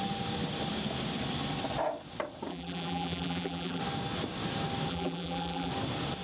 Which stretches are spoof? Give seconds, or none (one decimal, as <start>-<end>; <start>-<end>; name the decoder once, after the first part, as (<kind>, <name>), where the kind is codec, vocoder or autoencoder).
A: 2.5-3.8 (vocoder, BigVGAN v2); 4.9-5.7